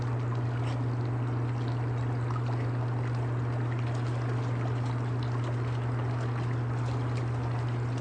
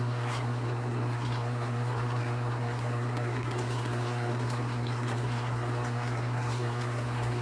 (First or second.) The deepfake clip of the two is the second